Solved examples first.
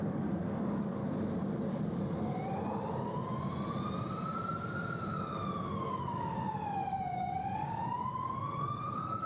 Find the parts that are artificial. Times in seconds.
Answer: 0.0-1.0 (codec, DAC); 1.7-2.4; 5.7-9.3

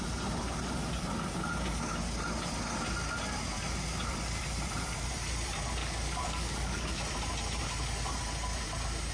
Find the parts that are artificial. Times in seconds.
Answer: 5.8-7.0 (codec, DAC)

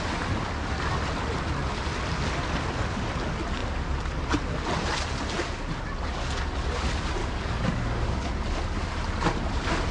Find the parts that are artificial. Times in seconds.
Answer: 7.2-8.3 (codec, DAC)

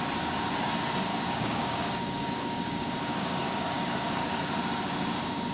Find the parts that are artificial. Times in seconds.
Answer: 1.1-4.4 (codec, DAC)

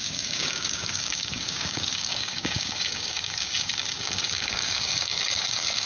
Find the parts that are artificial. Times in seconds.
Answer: 0.0-5.9 (codec, DAC)

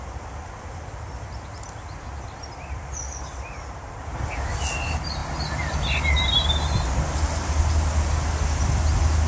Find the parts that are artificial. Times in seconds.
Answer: none